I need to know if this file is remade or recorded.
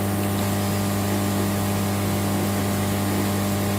recorded